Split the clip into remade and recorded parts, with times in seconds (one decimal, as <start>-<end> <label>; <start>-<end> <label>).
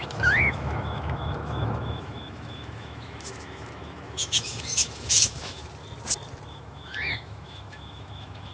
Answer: 0.0-5.6 remade; 5.6-6.5 recorded; 6.5-8.5 remade